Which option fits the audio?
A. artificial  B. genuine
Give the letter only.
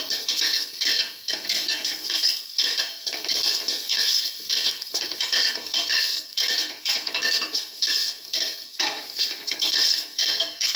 A